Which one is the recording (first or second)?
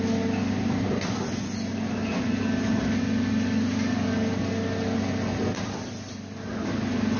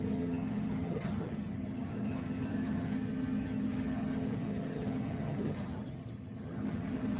first